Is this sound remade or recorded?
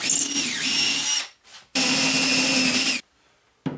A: recorded